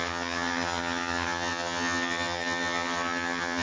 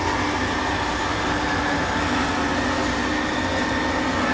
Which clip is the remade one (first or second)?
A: first